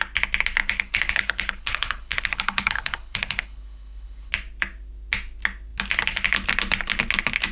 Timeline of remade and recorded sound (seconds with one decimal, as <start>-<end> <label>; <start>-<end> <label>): 0.0-0.6 recorded; 0.6-4.3 remade; 4.3-7.5 recorded